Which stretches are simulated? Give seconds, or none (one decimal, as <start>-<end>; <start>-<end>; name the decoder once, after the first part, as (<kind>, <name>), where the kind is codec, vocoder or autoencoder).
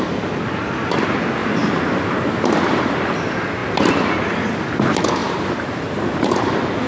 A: 1.4-3.0 (vocoder, BigVGAN v2); 5.2-6.5